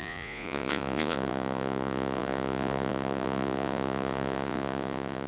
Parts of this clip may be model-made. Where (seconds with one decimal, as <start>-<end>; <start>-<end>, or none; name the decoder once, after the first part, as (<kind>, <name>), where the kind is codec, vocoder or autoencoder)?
0.0-5.3 (vocoder, Vocos)